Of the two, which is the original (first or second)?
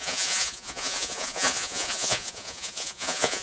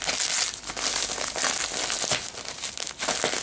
second